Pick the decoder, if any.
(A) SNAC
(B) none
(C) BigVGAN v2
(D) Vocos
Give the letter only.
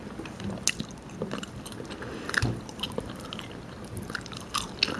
B